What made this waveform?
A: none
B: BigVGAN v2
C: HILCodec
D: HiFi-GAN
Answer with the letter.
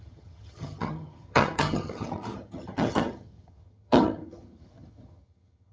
D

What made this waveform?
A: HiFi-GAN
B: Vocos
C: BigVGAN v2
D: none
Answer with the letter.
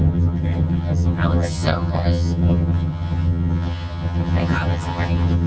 A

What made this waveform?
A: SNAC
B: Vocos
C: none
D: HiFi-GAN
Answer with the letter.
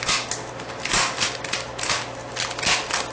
C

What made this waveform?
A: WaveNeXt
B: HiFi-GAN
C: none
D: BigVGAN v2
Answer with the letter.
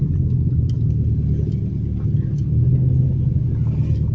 C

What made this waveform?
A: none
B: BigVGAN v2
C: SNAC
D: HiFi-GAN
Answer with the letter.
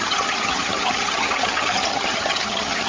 D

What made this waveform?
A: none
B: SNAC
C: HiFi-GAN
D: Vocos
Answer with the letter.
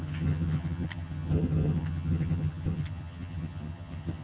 C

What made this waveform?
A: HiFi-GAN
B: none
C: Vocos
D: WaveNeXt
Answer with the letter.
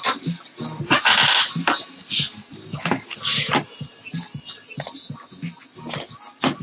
B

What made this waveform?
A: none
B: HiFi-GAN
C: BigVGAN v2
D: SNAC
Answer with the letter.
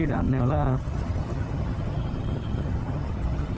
B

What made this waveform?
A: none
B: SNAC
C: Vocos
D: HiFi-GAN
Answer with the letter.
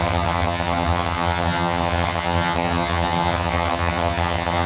D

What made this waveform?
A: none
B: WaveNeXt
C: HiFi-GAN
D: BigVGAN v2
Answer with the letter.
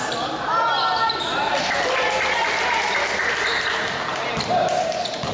A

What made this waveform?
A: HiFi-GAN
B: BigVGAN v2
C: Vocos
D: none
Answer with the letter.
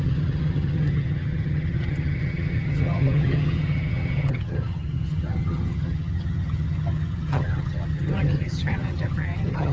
A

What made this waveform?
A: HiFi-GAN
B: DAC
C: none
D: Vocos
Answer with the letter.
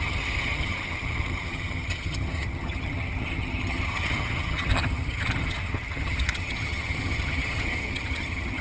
A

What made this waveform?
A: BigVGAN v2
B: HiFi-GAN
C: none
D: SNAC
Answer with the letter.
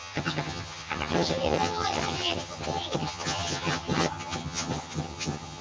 B